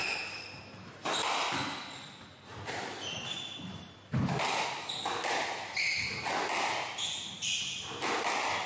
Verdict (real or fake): real